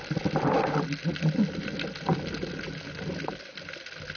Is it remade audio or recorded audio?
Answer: recorded